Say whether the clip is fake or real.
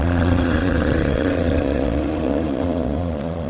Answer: fake